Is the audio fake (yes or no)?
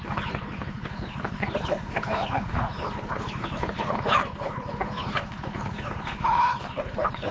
yes